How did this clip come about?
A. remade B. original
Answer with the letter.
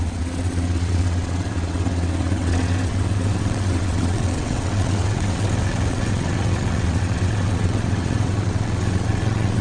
A